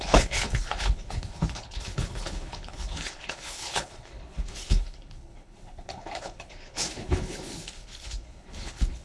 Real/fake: fake